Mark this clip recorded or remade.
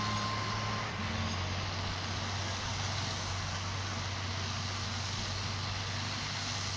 recorded